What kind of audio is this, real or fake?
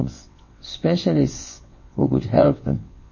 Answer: fake